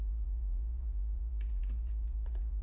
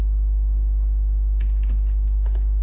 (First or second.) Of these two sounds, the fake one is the first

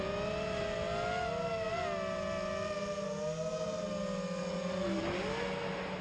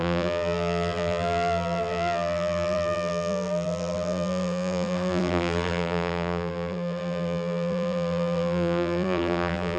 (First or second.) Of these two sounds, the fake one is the second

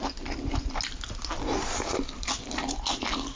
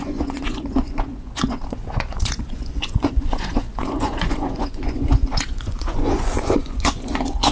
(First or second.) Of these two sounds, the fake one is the second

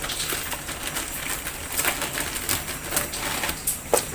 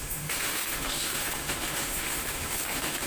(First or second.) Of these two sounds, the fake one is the second